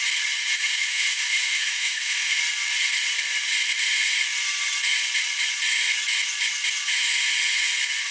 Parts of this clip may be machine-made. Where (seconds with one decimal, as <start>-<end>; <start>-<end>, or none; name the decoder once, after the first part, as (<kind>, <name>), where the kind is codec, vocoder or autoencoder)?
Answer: 0.5-2.4 (autoencoder, DAC-VAE)